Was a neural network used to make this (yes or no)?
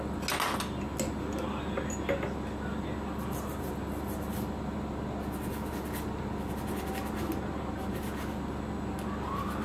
no